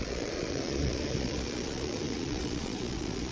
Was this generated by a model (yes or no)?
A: yes